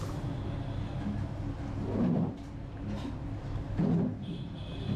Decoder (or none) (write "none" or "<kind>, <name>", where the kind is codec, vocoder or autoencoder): none